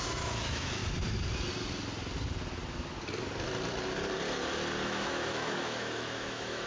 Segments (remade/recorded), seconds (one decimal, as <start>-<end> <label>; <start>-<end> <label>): 0.0-0.8 remade; 0.8-4.8 recorded; 4.8-6.7 remade

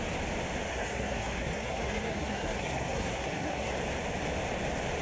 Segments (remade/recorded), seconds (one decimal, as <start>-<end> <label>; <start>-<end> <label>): 0.0-0.7 recorded; 0.7-3.7 remade; 3.7-5.0 recorded

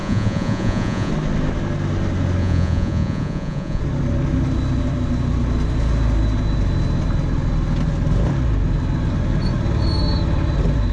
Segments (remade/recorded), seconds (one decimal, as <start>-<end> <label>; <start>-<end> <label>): 0.0-1.1 remade; 1.1-2.4 recorded; 2.4-3.8 remade; 3.8-10.9 recorded